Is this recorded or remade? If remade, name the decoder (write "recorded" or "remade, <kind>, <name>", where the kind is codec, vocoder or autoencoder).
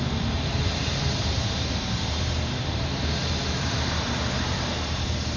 remade, vocoder, BigVGAN v2